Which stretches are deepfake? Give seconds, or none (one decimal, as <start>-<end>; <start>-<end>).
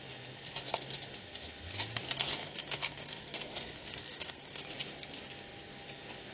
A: 2.4-4.6